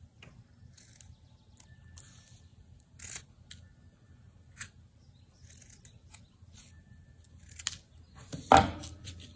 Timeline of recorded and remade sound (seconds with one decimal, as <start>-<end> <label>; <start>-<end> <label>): 0.0-9.4 recorded